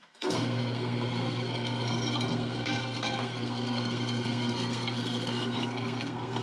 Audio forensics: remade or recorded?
remade